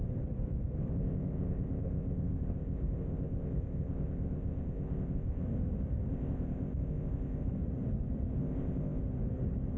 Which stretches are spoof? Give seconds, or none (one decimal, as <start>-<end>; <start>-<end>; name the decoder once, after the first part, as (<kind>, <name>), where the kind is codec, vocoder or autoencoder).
0.9-5.4 (codec, ZipCodec); 6.1-7.5; 8.4-9.0